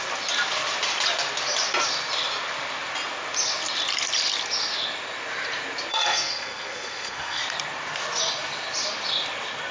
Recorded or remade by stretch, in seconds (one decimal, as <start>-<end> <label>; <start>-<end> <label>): 0.0-5.9 recorded; 5.9-7.4 remade; 7.4-9.7 recorded